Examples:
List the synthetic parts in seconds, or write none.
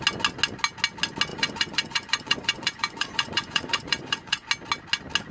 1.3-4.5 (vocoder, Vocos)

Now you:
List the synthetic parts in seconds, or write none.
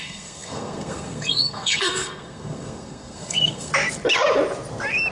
0.0-3.7 (codec, SNAC)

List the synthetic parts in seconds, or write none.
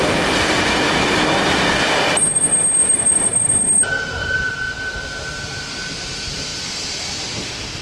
2.8-4.5 (vocoder, BigVGAN v2); 6.5-7.8